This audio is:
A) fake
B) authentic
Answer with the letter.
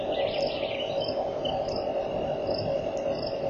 B